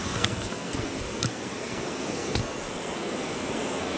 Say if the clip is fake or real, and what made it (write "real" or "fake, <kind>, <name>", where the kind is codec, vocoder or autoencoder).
fake, codec, SNAC